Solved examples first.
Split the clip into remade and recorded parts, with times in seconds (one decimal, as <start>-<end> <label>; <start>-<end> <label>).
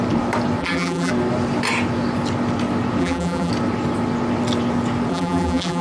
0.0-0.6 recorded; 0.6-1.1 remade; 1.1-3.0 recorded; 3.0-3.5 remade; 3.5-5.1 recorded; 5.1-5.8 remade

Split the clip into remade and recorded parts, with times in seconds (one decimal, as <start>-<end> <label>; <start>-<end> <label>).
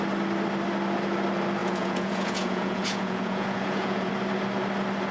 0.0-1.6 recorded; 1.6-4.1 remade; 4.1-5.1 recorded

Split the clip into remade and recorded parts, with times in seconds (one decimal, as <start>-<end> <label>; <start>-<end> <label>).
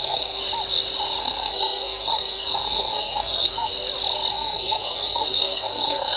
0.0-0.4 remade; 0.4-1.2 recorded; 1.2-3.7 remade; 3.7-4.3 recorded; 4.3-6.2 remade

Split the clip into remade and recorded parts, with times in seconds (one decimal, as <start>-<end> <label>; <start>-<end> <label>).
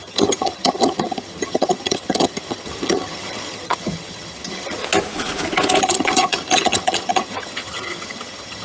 0.0-4.8 remade; 4.8-5.8 recorded; 5.8-8.6 remade